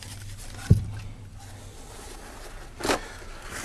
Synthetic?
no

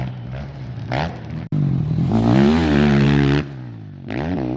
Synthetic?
no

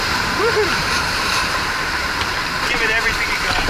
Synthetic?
yes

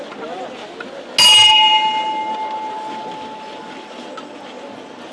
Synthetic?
no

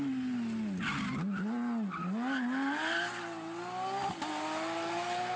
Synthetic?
no